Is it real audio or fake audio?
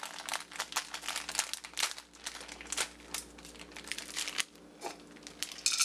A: real